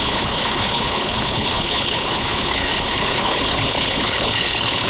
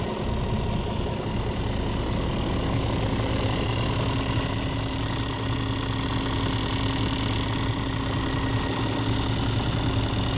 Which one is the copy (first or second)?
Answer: first